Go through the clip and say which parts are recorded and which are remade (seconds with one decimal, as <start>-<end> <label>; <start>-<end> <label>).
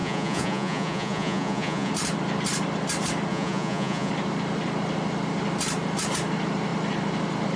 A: 0.0-1.9 remade; 1.9-3.3 recorded; 3.3-4.1 remade; 4.1-7.6 recorded